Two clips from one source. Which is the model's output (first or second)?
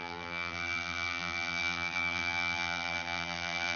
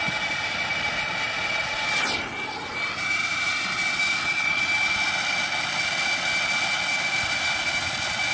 first